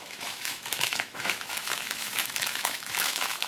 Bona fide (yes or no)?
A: no